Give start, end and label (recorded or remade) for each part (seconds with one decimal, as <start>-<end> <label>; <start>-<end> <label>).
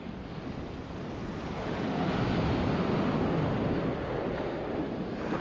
0.0-5.4 recorded